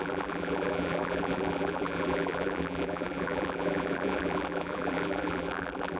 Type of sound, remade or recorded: remade